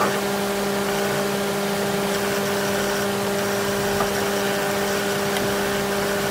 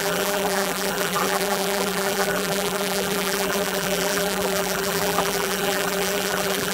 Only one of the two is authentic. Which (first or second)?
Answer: first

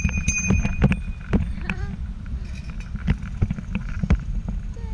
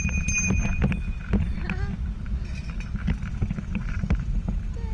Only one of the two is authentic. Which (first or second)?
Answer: second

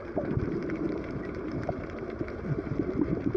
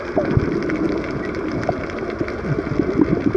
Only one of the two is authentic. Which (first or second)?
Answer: second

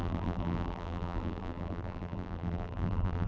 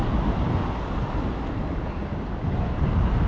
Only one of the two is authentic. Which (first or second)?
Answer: second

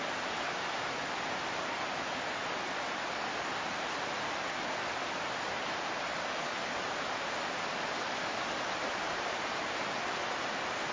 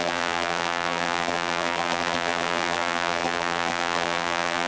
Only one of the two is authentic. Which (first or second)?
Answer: first